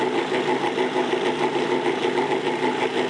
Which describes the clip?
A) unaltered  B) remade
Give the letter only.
A